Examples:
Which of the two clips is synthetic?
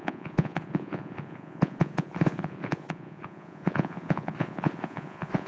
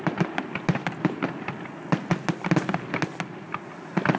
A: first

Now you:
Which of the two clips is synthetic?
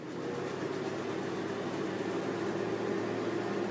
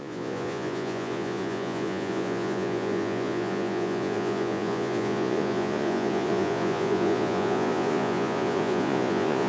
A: second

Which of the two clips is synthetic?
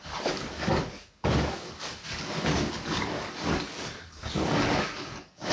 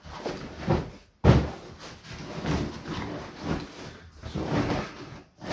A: first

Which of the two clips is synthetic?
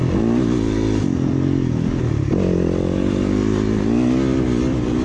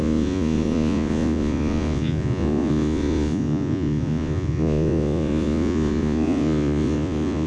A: second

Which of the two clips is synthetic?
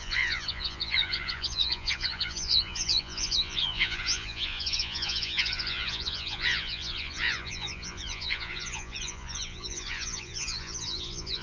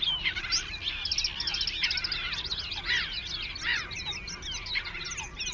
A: first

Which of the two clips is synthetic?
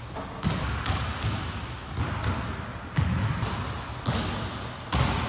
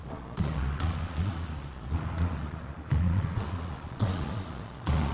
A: second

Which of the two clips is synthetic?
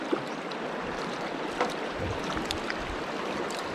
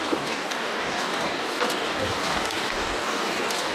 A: second